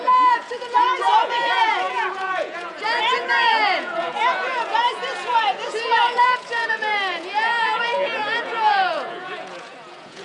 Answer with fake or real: fake